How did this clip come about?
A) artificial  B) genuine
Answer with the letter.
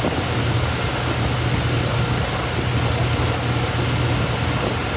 B